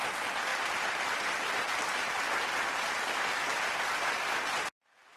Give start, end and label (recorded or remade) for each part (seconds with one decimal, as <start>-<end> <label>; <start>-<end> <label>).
0.0-0.5 recorded; 0.5-2.1 remade; 2.1-3.5 recorded; 3.5-4.4 remade; 4.4-5.2 recorded